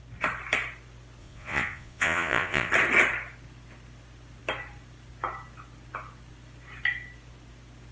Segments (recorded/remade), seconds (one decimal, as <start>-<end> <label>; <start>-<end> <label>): 0.0-1.2 recorded; 1.2-2.7 remade; 2.7-7.9 recorded